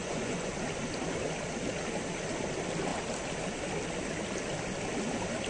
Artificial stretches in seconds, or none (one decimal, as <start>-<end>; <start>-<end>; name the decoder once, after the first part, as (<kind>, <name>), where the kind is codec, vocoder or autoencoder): 0.0-0.5 (vocoder, Vocos)